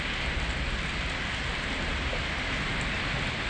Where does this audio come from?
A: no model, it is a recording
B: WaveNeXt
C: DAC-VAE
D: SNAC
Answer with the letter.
A